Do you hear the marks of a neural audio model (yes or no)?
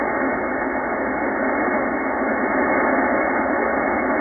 no